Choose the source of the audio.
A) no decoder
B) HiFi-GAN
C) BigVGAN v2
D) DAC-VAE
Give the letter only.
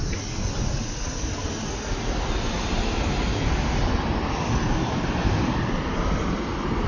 A